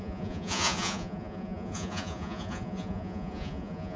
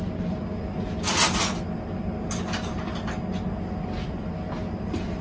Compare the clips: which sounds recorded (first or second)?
second